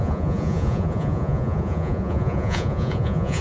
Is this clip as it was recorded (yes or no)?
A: no